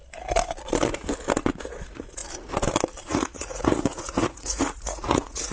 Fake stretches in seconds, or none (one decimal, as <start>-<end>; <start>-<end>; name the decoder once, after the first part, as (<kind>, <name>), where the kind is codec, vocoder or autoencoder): 1.8-2.2 (vocoder, Vocos); 3.0-5.5